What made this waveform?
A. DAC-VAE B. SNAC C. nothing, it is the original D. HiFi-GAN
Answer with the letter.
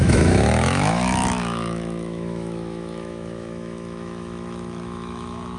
A